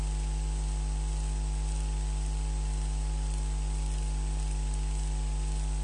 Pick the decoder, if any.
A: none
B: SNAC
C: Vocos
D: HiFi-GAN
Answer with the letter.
A